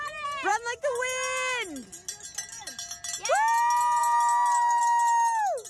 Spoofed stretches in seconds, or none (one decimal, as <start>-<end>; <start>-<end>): none